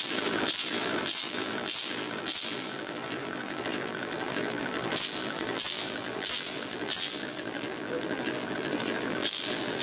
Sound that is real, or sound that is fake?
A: fake